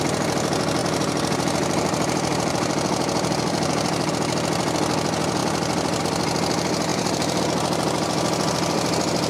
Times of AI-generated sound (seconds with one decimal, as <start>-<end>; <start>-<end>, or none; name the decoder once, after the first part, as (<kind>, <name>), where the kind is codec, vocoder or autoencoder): 0.8-4.1 (vocoder, BigVGAN v2); 6.9-7.4